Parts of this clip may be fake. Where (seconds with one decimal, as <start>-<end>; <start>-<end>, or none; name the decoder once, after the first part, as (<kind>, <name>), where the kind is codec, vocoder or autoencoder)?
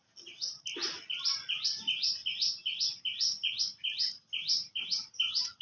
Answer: 0.8-2.8 (vocoder, BigVGAN v2); 4.6-5.1